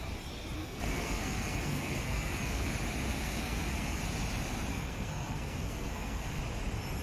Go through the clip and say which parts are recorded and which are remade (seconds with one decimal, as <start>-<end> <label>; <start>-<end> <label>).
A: 0.0-0.6 recorded; 0.6-2.7 remade; 2.7-3.1 recorded; 3.1-4.0 remade; 4.0-4.7 recorded; 4.7-6.4 remade; 6.4-7.0 recorded